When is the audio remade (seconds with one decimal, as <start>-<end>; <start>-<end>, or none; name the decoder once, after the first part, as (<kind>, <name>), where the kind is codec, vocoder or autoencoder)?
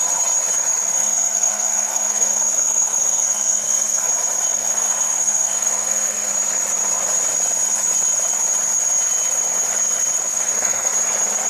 1.0-4.1 (codec, SNAC); 4.5-6.3; 10.3-10.9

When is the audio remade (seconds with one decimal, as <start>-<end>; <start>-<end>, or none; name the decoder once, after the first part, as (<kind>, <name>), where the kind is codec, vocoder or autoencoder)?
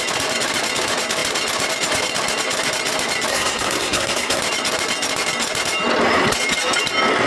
3.3-4.4 (codec, SNAC)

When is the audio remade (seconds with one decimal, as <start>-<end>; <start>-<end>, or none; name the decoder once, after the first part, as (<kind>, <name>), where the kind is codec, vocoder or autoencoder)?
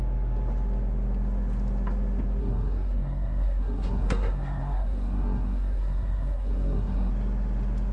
2.4-7.1 (codec, SNAC)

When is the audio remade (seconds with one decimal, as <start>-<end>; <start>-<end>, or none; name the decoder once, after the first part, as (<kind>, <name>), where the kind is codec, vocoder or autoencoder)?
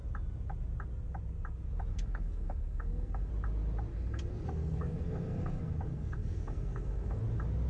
1.9-3.3 (codec, SNAC); 3.9-7.2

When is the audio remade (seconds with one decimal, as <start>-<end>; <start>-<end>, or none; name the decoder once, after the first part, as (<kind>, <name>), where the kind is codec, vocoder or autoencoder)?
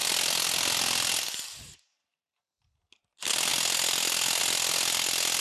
none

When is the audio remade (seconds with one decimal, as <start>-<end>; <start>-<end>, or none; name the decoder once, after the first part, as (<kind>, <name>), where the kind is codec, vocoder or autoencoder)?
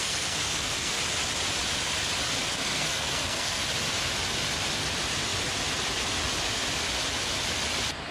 0.0-1.0 (codec, SNAC); 2.4-3.6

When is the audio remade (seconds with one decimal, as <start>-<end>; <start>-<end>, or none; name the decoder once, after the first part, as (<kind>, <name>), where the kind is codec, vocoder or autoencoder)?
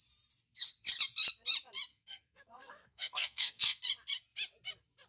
1.9-3.8 (codec, SNAC)